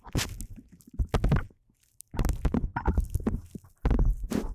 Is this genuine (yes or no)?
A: yes